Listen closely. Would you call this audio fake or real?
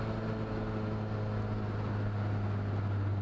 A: real